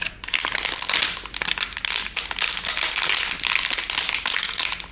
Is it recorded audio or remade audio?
recorded